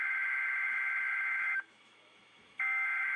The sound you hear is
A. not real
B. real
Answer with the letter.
A